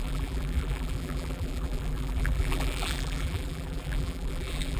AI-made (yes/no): yes